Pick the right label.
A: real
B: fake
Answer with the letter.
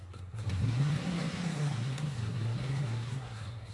B